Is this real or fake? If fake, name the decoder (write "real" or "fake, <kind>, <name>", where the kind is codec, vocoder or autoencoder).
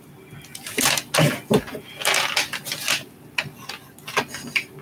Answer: real